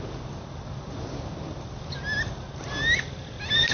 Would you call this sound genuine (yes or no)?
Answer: yes